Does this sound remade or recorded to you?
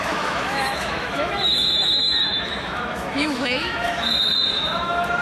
remade